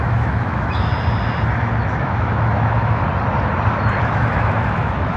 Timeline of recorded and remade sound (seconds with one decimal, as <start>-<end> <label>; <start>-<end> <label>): 0.0-0.9 remade; 0.9-1.6 recorded; 1.6-3.0 remade; 3.0-4.0 recorded; 4.0-5.2 remade

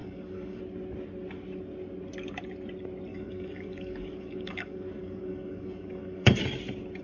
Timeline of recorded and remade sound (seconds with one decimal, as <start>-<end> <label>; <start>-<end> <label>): 0.0-0.6 remade; 0.6-3.1 recorded; 3.1-6.4 remade; 6.4-7.0 recorded

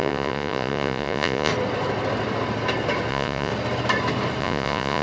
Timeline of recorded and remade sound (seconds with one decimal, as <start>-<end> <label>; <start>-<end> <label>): 0.0-1.5 remade; 1.5-3.1 recorded; 3.1-3.5 remade; 3.5-4.4 recorded; 4.4-5.0 remade

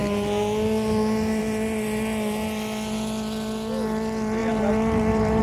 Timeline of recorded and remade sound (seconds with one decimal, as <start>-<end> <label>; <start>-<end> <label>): 0.0-4.4 recorded; 4.4-5.4 remade

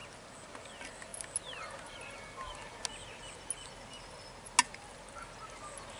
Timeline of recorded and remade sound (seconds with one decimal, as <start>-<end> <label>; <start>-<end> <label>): 0.0-6.0 recorded

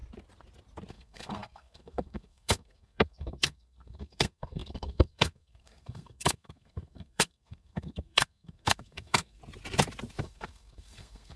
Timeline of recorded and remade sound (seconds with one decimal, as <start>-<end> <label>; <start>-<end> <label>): 0.0-0.9 recorded; 0.9-9.4 remade; 9.4-10.2 recorded; 10.2-11.4 remade

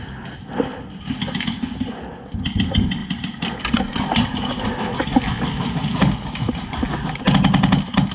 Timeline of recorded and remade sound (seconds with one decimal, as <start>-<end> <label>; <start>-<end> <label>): 0.0-8.1 recorded